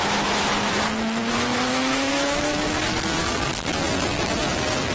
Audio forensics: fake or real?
fake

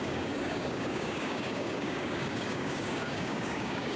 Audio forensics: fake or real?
fake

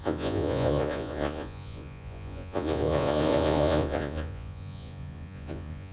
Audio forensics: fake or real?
fake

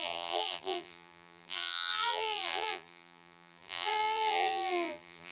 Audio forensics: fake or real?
fake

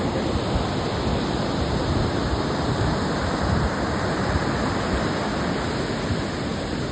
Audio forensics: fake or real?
real